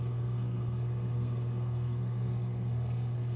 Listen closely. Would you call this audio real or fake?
fake